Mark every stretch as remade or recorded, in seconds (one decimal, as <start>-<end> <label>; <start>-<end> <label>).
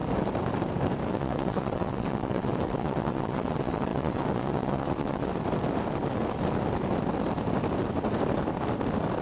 0.0-1.1 recorded; 1.1-5.3 remade; 5.3-9.2 recorded